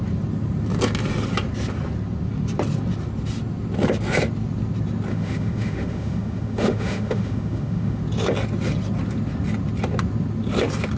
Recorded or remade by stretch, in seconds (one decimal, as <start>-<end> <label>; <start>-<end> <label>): 0.0-5.1 recorded; 5.1-8.0 remade; 8.0-11.0 recorded